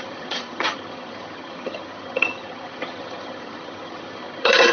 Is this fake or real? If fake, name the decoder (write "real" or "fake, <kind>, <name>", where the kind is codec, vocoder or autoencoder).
fake, vocoder, HiFi-GAN